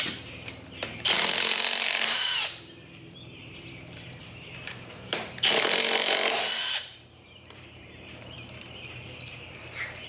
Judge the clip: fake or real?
fake